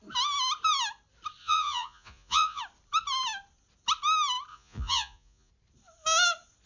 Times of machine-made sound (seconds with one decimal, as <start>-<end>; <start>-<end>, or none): 1.4-2.6; 4.5-5.5